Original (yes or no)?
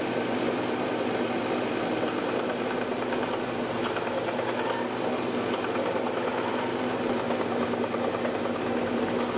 yes